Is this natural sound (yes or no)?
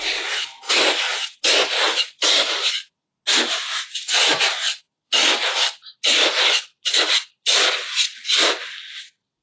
yes